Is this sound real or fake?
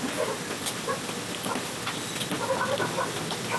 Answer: real